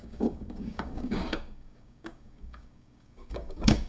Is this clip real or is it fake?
fake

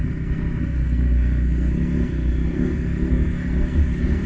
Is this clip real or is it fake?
fake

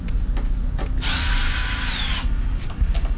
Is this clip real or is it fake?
real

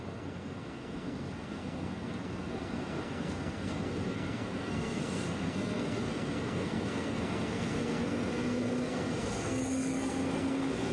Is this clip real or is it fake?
fake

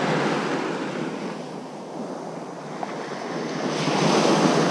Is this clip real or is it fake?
real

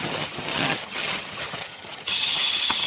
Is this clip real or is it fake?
fake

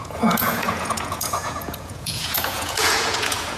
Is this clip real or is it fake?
fake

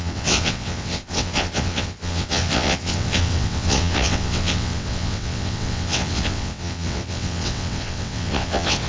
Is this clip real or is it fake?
fake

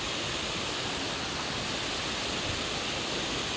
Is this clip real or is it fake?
real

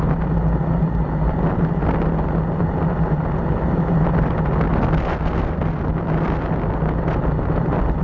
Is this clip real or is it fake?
real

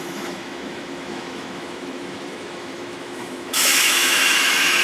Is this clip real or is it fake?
fake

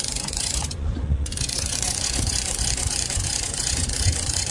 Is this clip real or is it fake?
fake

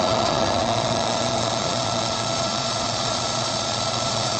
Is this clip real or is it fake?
fake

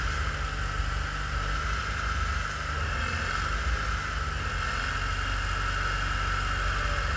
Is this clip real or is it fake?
real